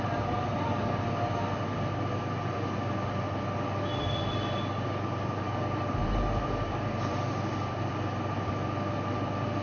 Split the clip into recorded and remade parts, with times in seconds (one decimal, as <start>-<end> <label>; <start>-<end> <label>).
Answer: 0.0-6.0 recorded; 6.0-8.5 remade; 8.5-9.6 recorded